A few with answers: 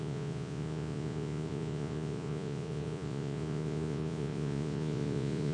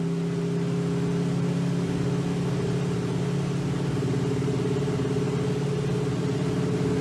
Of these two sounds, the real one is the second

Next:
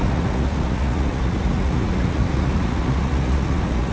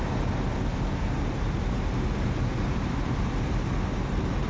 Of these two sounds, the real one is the second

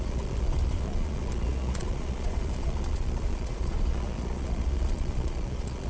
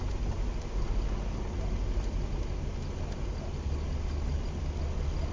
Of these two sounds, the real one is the second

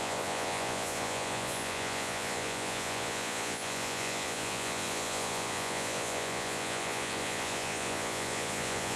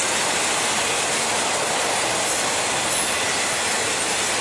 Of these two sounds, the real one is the second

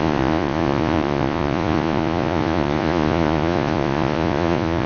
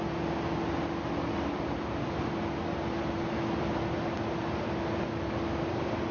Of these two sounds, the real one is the second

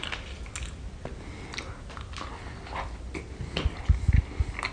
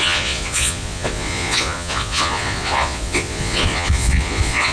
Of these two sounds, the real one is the first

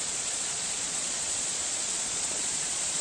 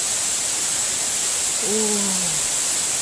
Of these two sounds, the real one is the second